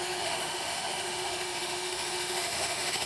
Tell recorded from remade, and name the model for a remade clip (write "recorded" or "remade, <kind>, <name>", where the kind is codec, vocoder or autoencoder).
remade, autoencoder, DAC-VAE